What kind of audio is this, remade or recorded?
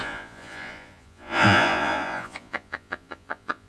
remade